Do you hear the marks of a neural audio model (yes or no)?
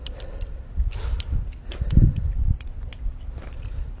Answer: no